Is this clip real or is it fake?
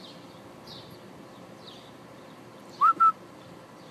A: fake